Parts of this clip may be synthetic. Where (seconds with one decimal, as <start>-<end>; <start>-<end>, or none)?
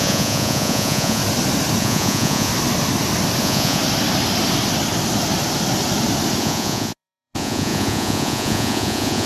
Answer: 0.0-1.2; 1.8-2.5; 3.4-3.8; 6.4-9.3